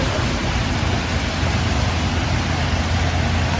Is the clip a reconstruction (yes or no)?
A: no